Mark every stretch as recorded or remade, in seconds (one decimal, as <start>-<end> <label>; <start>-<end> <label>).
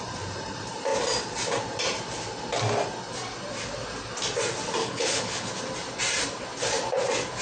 0.0-4.8 recorded; 4.8-5.5 remade; 5.5-7.4 recorded